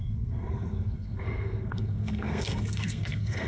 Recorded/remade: remade